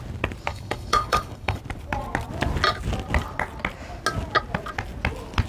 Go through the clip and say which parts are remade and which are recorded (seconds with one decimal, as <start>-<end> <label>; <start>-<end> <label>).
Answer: 0.0-0.5 recorded; 0.5-1.6 remade; 1.6-5.5 recorded